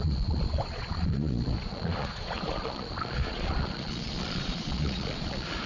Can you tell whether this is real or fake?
fake